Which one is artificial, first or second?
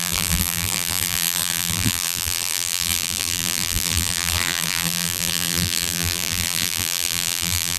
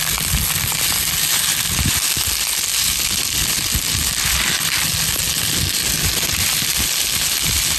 first